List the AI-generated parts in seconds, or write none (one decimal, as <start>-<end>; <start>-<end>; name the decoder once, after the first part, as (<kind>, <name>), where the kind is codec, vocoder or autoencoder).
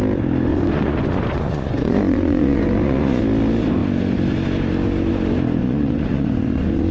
0.5-3.2 (vocoder, Vocos); 5.6-6.9